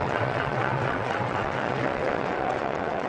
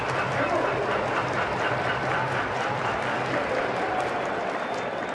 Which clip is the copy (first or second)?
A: first